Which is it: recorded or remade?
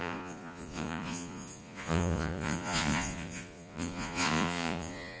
remade